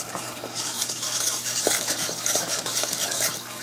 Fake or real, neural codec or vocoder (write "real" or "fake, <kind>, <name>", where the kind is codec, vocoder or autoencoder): fake, codec, DAC